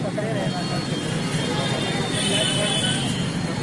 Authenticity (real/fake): real